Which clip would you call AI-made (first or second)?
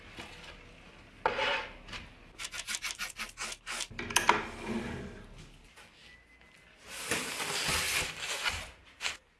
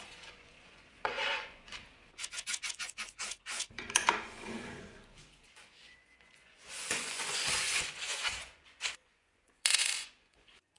second